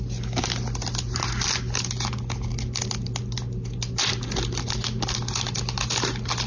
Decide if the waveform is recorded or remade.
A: recorded